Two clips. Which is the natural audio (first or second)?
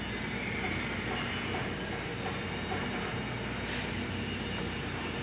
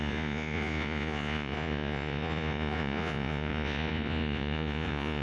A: first